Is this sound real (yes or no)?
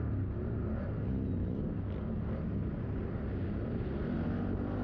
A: yes